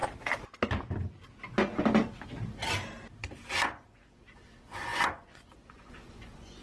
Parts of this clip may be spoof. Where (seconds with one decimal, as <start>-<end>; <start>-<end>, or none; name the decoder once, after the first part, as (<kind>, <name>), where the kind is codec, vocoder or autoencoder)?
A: 3.5-6.6 (vocoder, Vocos)